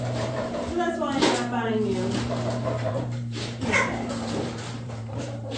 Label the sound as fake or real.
fake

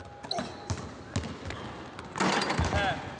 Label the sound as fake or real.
real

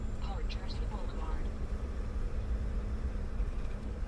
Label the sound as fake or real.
fake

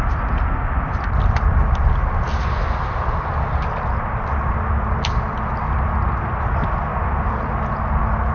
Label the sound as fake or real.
real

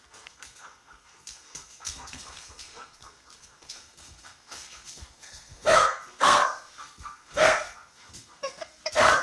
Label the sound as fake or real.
fake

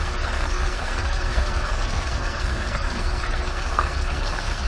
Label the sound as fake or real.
fake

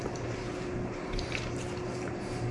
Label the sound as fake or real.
fake